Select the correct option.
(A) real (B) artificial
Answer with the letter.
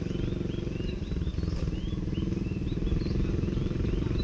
A